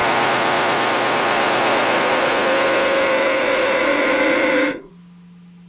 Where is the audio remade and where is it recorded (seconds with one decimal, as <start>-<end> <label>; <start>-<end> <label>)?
0.0-2.3 remade; 2.3-3.4 recorded; 3.4-4.9 remade; 4.9-5.7 recorded